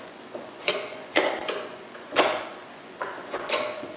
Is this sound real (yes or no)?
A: no